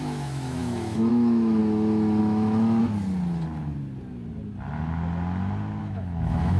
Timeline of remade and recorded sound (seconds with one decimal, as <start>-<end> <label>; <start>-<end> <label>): 0.0-1.6 remade; 1.6-2.2 recorded; 2.2-2.8 remade; 2.8-5.8 recorded; 5.8-6.6 remade